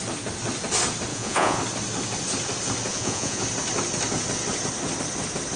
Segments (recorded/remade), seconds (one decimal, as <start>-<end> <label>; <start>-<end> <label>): 0.0-1.1 recorded; 1.1-1.6 remade; 1.6-2.9 recorded; 2.9-3.4 remade; 3.4-5.6 recorded